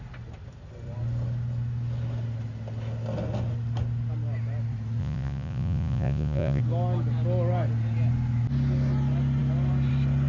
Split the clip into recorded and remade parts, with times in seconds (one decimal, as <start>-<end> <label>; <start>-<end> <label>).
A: 0.0-5.0 recorded; 5.0-6.6 remade; 6.6-10.3 recorded

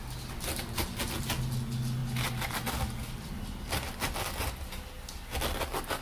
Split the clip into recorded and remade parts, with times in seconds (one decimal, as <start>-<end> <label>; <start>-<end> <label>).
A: 0.0-6.0 recorded

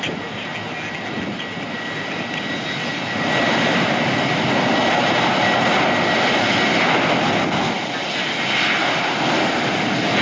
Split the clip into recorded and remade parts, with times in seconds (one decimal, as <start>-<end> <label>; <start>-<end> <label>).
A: 0.0-10.2 recorded